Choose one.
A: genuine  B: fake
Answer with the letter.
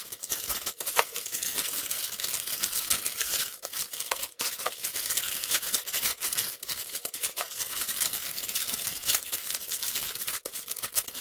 B